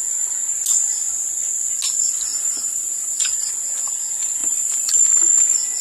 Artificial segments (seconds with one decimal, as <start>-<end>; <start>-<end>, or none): 2.3-3.5; 4.4-5.0